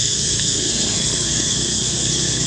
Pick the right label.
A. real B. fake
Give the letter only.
B